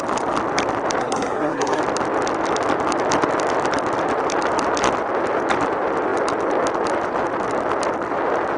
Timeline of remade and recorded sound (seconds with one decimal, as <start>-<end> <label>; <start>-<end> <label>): 0.0-1.0 recorded; 1.0-1.8 remade; 1.8-8.6 recorded